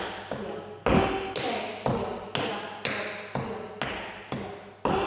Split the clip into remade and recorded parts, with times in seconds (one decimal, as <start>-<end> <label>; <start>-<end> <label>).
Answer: 0.0-5.1 recorded